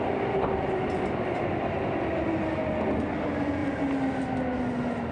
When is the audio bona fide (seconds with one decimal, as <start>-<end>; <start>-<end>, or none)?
0.0-5.1